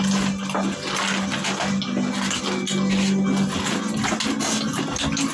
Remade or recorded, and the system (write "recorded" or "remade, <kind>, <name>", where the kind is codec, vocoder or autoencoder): recorded